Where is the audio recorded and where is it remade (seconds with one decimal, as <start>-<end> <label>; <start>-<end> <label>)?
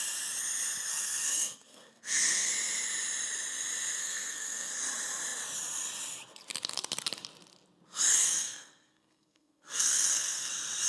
0.0-0.9 recorded; 0.9-2.5 remade; 2.5-4.0 recorded; 4.0-4.7 remade; 4.7-8.1 recorded; 8.1-10.5 remade; 10.5-10.9 recorded